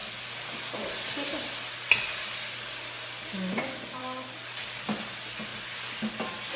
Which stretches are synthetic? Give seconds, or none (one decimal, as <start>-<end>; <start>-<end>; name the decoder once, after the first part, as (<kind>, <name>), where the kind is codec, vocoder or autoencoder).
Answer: none